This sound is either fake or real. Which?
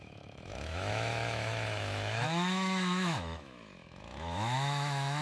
fake